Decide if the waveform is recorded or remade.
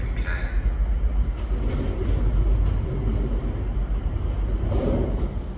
recorded